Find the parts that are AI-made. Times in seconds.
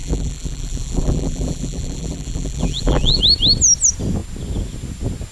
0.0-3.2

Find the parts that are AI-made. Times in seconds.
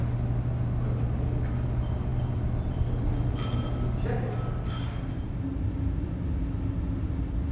none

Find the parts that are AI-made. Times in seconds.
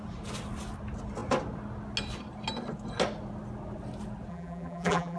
4.3-5.2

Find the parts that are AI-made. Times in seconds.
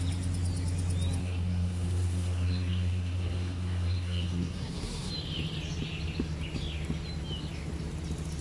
1.2-5.1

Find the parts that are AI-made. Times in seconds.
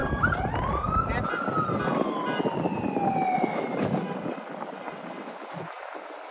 none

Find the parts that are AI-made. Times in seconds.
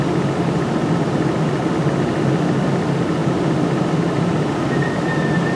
none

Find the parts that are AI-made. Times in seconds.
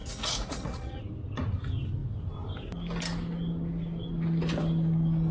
0.0-1.0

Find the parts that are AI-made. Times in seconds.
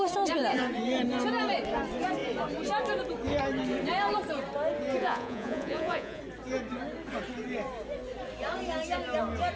5.0-6.2